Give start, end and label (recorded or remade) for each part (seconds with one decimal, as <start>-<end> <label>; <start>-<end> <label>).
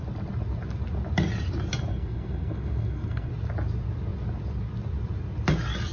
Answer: 0.0-1.9 recorded; 1.9-3.3 remade; 3.3-5.9 recorded